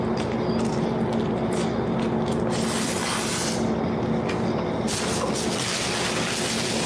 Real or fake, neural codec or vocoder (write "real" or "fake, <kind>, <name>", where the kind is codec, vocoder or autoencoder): real